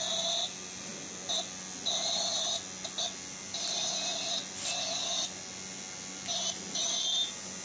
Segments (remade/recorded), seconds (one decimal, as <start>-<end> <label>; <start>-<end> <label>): 0.0-7.6 recorded